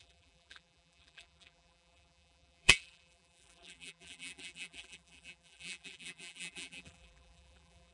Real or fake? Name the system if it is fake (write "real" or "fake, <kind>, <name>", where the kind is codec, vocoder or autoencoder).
fake, vocoder, BigVGAN v2